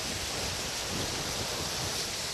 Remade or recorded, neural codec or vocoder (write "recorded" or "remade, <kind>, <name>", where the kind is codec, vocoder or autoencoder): recorded